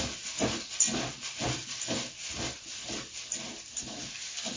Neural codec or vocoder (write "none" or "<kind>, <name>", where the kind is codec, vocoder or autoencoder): none